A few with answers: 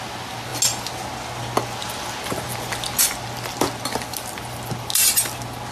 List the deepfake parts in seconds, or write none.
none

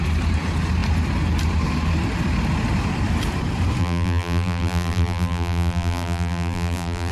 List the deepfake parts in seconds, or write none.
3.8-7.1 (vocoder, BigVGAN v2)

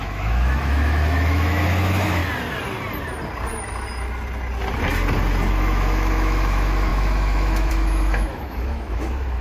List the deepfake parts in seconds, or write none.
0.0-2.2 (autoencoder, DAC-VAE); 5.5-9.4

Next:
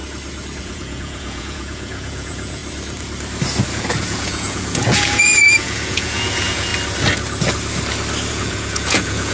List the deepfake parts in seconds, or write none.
0.6-2.6 (vocoder, Vocos); 3.7-6.7; 8.3-9.3